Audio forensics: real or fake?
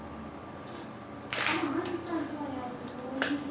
real